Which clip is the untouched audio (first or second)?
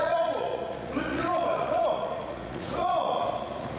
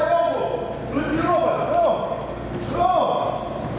second